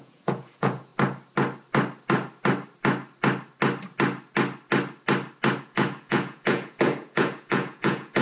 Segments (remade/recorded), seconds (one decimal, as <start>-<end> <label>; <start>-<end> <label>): 0.0-0.9 remade; 0.9-5.6 recorded; 5.6-8.2 remade